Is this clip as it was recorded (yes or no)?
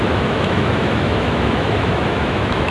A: no